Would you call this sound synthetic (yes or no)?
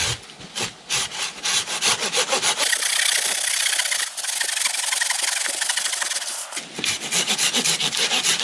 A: no